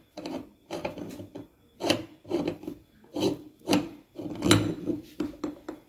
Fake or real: real